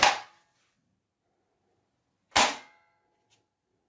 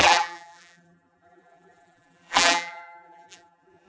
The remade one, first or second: second